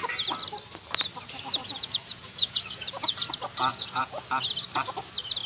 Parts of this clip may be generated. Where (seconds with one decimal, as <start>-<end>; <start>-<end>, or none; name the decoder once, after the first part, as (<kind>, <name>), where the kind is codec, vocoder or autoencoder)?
1.6-3.3 (vocoder, Vocos); 3.7-4.3